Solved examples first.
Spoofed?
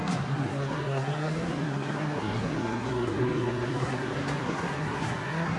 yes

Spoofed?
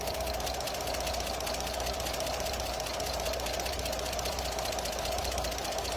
yes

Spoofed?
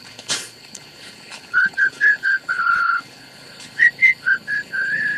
yes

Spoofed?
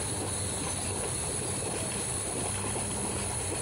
no